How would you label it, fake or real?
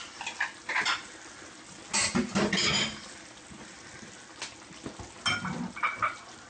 real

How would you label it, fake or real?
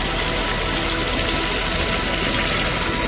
real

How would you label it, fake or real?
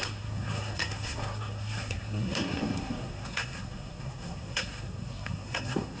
fake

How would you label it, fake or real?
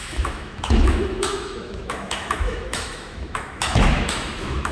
fake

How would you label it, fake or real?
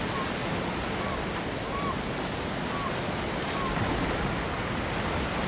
real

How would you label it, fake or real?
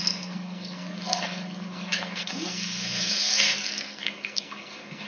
fake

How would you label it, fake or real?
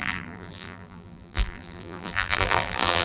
fake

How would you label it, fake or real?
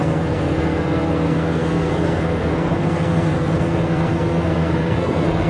fake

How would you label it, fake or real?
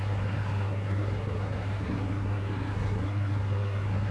fake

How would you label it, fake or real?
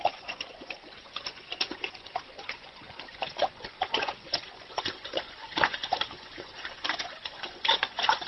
fake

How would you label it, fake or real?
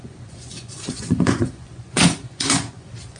fake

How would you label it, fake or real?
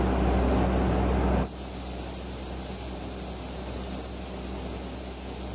real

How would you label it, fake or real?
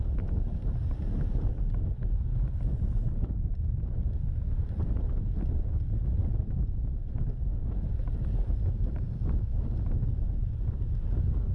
real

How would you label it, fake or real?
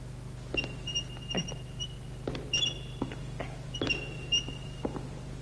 real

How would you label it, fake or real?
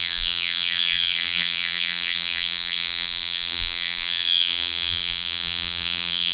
fake